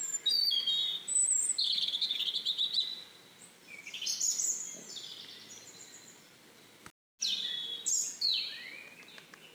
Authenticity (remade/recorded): recorded